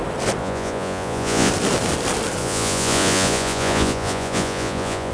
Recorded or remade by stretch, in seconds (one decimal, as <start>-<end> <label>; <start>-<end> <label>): 0.0-0.4 recorded; 0.4-1.5 remade; 1.5-2.4 recorded; 2.4-5.1 remade